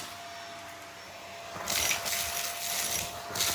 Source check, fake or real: real